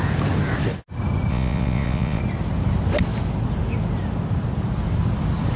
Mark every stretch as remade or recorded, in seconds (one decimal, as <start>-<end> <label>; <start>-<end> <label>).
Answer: 0.0-1.3 recorded; 1.3-2.2 remade; 2.2-5.6 recorded